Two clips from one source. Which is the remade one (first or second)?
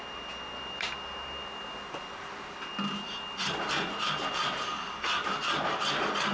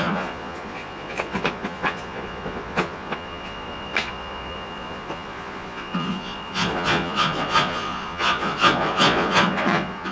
second